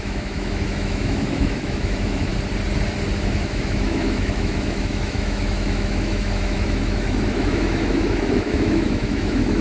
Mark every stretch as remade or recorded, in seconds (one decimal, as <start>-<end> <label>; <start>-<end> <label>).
0.0-2.3 remade; 2.3-3.2 recorded; 3.2-9.6 remade